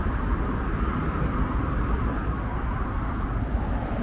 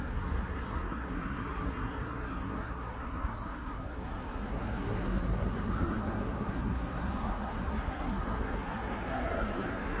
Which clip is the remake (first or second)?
second